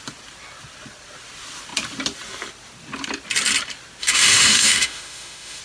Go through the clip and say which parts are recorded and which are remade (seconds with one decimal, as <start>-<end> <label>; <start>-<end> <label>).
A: 0.0-4.0 recorded; 4.0-5.6 remade